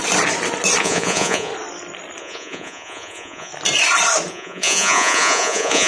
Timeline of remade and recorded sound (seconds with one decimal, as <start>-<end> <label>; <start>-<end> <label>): 0.0-0.8 recorded; 0.8-1.5 remade; 1.5-2.2 recorded; 2.2-3.5 remade; 3.5-4.3 recorded; 4.3-5.9 remade